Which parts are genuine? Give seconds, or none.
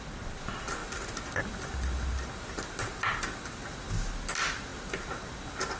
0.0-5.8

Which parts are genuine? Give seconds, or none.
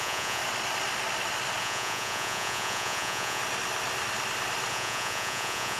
0.4-1.6; 3.4-4.7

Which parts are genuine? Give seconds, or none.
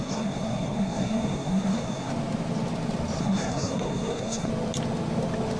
2.1-3.2; 4.5-5.6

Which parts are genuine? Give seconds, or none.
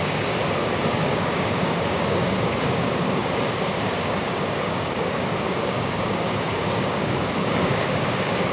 0.4-0.9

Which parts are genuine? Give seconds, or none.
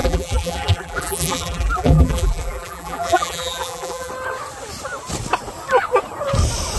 4.1-6.8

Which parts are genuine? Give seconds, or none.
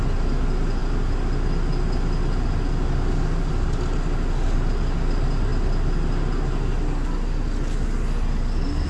0.0-8.9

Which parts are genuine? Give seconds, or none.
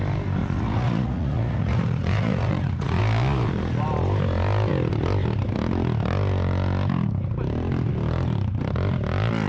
0.0-0.4; 3.0-9.5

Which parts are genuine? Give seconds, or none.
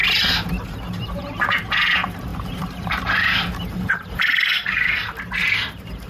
0.0-1.0